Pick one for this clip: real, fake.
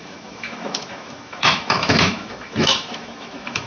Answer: fake